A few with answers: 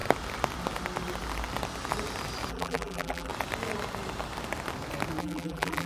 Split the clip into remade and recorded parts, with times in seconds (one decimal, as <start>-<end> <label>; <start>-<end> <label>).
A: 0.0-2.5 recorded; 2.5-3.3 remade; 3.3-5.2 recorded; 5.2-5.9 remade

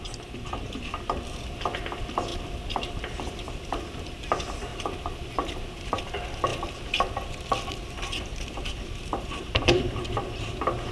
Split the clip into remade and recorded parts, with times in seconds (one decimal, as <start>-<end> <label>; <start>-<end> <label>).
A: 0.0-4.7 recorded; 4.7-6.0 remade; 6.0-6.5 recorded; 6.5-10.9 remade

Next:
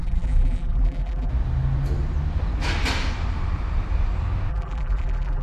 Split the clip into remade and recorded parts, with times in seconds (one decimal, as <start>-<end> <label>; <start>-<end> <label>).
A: 0.0-1.3 remade; 1.3-4.5 recorded; 4.5-5.4 remade

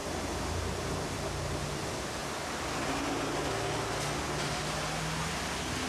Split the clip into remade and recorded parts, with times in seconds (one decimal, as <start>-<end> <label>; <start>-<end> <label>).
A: 0.0-0.5 recorded; 0.5-2.2 remade; 2.2-5.9 recorded

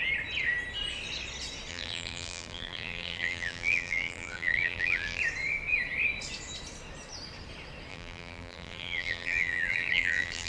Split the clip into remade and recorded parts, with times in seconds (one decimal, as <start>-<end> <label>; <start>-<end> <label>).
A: 0.0-1.7 recorded; 1.7-5.2 remade; 5.2-7.9 recorded; 7.9-10.5 remade

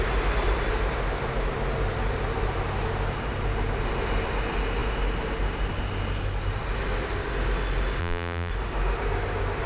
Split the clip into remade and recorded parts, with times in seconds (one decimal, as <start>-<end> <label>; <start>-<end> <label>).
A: 0.0-8.0 recorded; 8.0-8.5 remade; 8.5-9.7 recorded